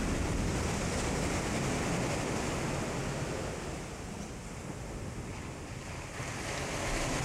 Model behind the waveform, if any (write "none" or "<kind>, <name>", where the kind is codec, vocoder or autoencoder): none